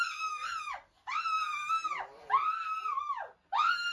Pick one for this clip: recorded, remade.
recorded